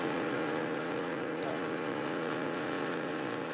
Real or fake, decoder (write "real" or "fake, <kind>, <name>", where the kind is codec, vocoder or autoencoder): fake, vocoder, Vocos